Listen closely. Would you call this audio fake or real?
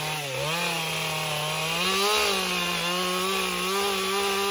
real